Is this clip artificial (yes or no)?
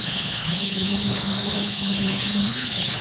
yes